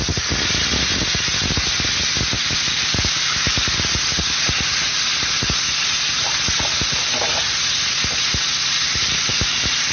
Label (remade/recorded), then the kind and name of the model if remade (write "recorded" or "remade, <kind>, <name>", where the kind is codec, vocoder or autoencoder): recorded